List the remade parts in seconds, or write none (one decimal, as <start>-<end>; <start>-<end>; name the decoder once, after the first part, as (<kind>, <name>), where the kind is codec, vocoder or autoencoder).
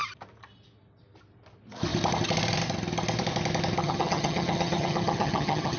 3.8-5.8 (vocoder, HiFi-GAN)